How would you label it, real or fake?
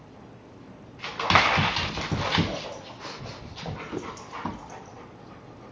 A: real